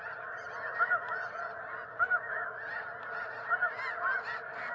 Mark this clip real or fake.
real